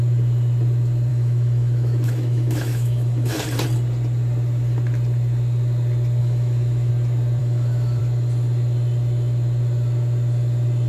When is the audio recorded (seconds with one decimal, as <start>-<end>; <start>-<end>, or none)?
0.0-1.1; 3.4-6.2; 6.9-7.4; 8.0-10.9

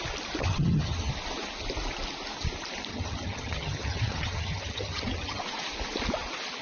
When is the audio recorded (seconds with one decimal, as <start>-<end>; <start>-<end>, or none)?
0.0-0.4; 1.1-2.9; 5.4-6.6

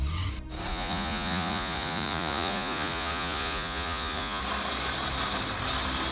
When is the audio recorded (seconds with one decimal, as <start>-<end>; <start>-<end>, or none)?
0.0-0.7; 4.4-6.1

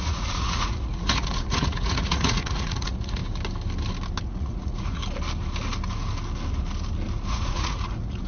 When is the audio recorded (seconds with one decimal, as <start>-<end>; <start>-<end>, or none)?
3.2-4.2; 5.0-7.3

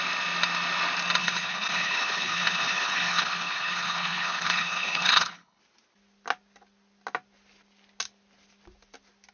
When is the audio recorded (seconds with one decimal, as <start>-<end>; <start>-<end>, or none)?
0.0-1.2; 5.6-9.3